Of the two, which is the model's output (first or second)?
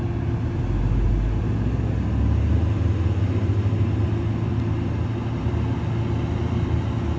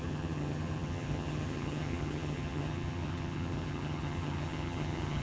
second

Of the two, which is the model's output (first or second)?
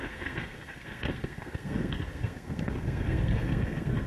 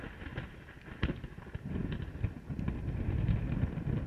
first